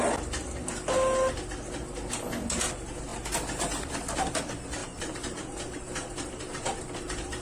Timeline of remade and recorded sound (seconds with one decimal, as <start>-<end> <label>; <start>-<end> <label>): 0.0-4.8 recorded; 4.8-6.8 remade; 6.8-7.4 recorded